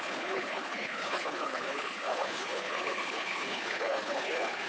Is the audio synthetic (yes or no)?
yes